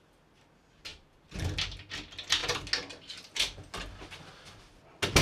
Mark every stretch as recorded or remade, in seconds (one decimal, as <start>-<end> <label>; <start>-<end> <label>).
0.0-5.2 recorded